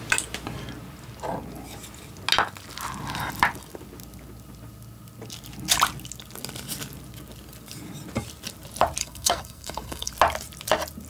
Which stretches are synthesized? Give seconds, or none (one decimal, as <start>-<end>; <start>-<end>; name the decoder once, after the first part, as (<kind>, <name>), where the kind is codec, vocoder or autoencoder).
9.0-10.1 (codec, SNAC)